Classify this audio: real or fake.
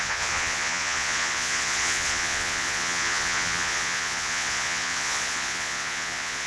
fake